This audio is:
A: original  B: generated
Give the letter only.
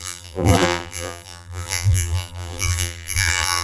B